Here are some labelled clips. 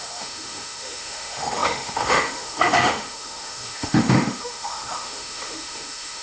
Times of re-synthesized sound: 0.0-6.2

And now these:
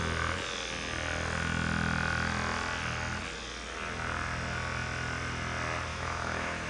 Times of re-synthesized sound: 5.9-6.7

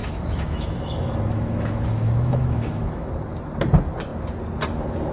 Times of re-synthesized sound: 0.0-3.1

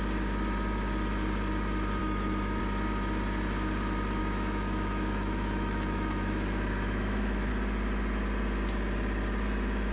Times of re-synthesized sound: 2.0-2.6; 4.2-7.5

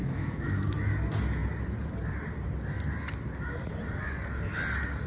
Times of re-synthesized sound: 0.0-0.7